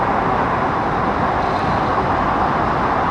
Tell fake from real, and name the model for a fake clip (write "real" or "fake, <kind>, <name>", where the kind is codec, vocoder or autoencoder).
real